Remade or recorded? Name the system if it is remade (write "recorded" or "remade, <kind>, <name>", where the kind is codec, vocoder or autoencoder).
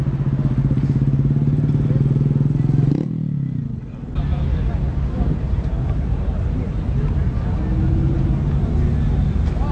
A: recorded